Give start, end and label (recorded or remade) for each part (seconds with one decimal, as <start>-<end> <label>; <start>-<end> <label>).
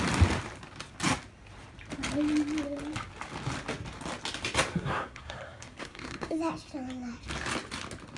0.0-4.7 recorded; 4.7-6.4 remade; 6.4-8.2 recorded